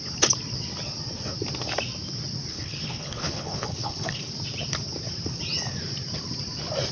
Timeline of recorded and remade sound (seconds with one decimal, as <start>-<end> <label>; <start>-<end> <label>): 0.0-2.5 recorded; 2.5-4.3 remade; 4.3-6.9 recorded